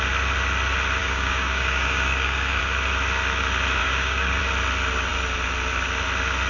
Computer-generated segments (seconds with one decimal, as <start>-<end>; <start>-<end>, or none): 1.0-2.6; 3.8-4.4